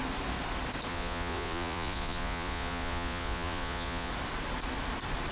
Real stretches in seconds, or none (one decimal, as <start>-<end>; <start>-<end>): 0.0-0.9; 4.1-5.3